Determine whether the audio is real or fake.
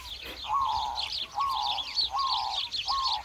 real